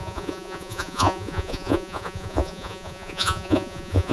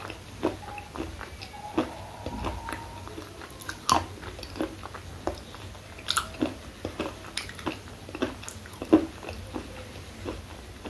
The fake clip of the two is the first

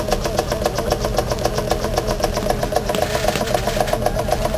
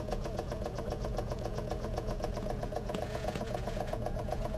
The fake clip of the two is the second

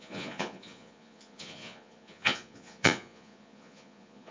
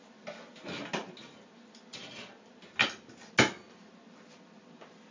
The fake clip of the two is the first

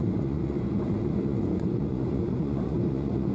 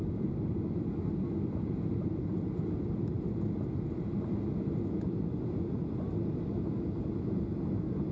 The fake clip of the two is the first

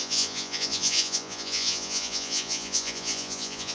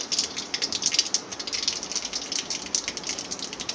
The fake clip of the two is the first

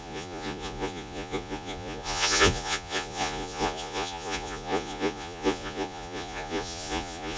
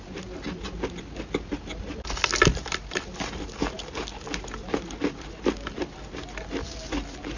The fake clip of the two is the first